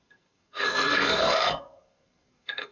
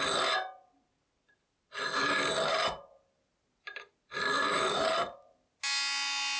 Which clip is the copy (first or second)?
first